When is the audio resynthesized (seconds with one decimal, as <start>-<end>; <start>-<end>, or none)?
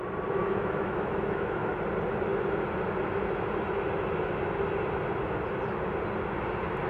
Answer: 0.4-1.7